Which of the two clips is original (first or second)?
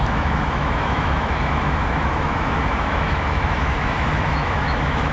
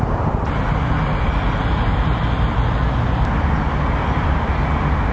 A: second